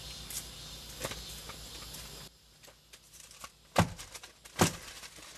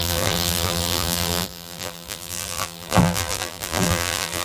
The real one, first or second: first